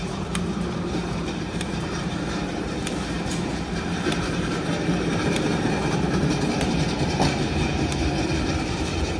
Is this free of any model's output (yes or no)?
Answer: no